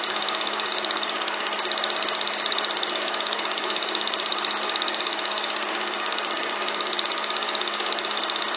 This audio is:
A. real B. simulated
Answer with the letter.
B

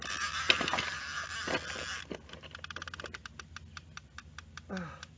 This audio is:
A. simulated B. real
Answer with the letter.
B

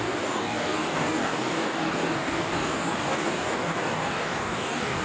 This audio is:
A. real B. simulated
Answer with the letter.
B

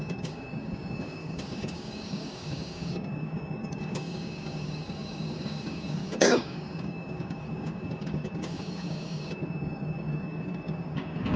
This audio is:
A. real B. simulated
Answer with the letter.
B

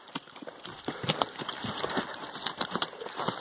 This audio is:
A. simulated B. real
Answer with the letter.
B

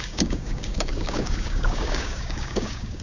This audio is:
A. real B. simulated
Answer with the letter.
B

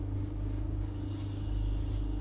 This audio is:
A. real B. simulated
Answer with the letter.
B